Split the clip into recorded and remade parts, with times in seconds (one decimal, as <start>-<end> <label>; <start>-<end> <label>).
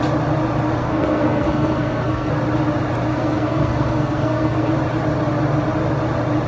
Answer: 0.0-0.8 recorded; 0.8-2.3 remade; 2.3-3.1 recorded; 3.1-4.7 remade; 4.7-6.5 recorded